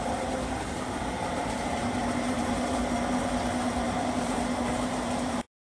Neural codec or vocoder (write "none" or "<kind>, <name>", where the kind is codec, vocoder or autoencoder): vocoder, BigVGAN v2